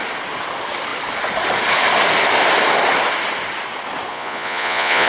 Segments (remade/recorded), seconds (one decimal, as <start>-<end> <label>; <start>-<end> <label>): 0.0-4.1 recorded; 4.1-5.1 remade